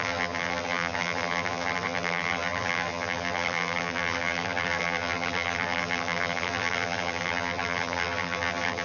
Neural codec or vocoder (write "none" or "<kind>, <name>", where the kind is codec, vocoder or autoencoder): vocoder, BigVGAN v2